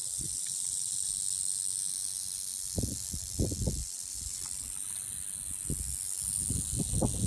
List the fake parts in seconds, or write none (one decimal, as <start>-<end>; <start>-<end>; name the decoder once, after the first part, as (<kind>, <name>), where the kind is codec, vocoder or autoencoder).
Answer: 0.0-1.1 (vocoder, BigVGAN v2); 3.8-4.4